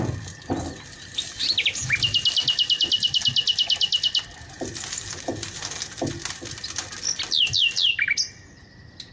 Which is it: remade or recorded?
recorded